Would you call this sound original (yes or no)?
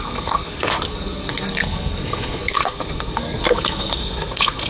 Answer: no